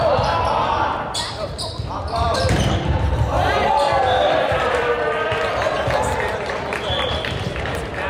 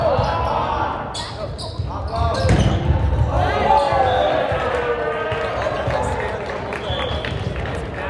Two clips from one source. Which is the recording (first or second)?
second